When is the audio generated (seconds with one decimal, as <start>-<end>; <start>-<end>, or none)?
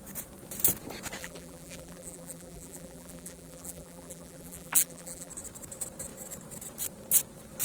1.2-5.3